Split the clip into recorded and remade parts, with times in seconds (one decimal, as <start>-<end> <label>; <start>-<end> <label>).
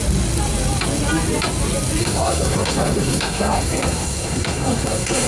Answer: 0.0-2.0 recorded; 2.0-5.3 remade